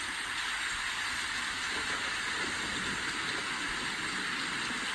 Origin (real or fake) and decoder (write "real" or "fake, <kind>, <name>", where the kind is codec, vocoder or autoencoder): real